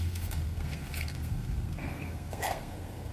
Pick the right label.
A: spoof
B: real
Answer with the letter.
A